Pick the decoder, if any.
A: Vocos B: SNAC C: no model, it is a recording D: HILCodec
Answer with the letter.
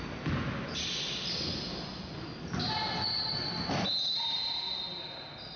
C